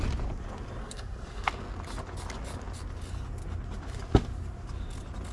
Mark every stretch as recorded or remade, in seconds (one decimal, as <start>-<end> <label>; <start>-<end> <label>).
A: 0.0-0.8 recorded; 0.8-1.5 remade; 1.5-5.3 recorded